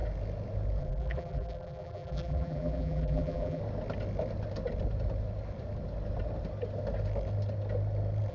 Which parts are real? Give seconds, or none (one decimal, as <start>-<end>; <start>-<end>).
0.0-0.8; 3.6-8.3